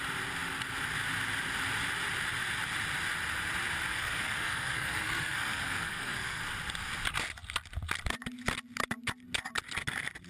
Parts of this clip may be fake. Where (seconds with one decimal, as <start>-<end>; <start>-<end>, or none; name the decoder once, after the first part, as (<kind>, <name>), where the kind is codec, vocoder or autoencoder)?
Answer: 3.9-6.4 (codec, SNAC)